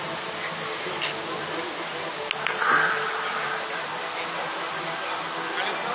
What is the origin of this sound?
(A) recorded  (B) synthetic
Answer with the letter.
A